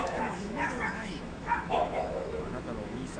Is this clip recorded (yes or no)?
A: no